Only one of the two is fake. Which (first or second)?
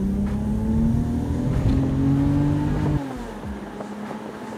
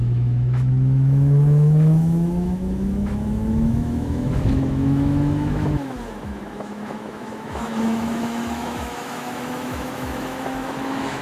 second